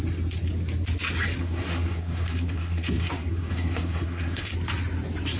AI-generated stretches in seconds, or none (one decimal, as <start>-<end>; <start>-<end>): 1.4-4.5